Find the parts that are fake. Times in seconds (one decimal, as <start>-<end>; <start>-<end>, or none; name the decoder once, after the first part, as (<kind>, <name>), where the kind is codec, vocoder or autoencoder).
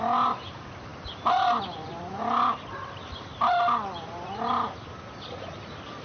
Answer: none